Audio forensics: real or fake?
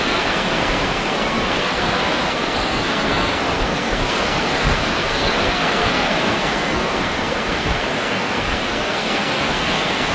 fake